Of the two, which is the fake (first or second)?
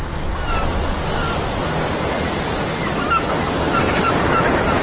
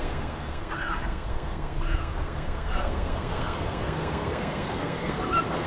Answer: second